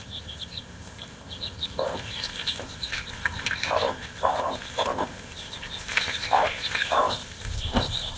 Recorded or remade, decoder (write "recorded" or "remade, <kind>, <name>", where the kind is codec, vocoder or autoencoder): remade, codec, ZipCodec